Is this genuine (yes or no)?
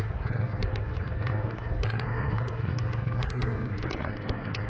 no